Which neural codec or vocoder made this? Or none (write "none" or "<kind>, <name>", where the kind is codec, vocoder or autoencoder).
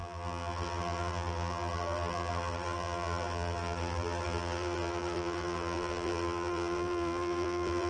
vocoder, BigVGAN v2